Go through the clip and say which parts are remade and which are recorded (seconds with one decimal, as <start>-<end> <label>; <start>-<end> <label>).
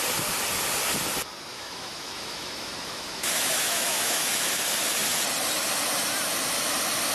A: 0.0-1.5 recorded; 1.5-4.6 remade; 4.6-7.1 recorded